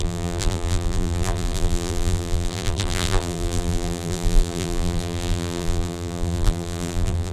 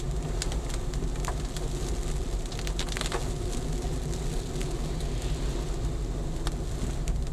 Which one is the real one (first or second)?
second